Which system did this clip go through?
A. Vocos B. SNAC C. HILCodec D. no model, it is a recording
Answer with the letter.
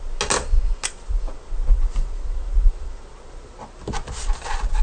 D